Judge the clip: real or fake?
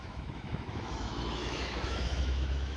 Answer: fake